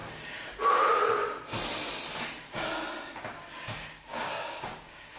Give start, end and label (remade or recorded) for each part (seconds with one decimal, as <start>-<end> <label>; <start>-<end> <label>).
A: 0.0-4.1 recorded; 4.1-5.2 remade